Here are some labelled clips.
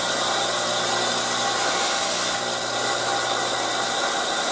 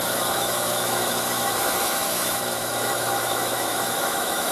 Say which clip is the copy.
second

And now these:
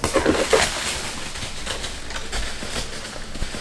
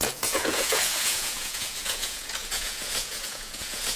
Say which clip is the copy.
second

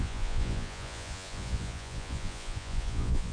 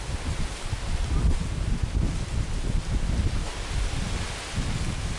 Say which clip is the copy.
first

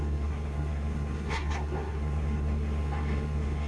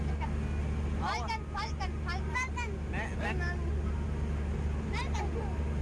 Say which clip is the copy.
first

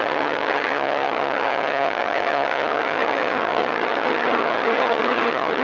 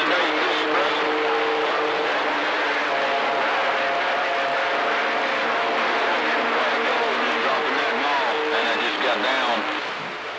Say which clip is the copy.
first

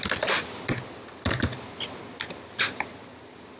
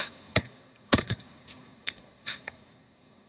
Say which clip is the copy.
second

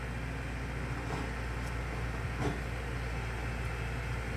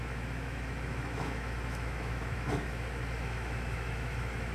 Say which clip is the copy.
second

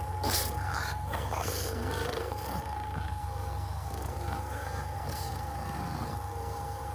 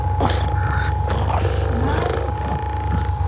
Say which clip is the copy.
first